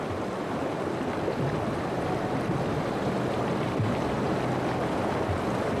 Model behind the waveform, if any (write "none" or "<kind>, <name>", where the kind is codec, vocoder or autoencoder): none